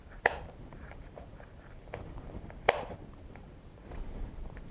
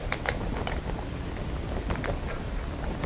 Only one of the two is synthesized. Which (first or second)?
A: first